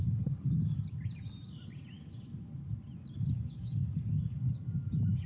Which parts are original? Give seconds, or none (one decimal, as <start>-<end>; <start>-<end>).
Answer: 0.7-3.3